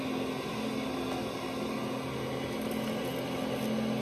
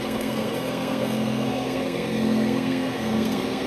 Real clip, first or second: first